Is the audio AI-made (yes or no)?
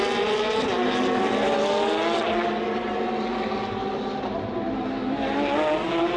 no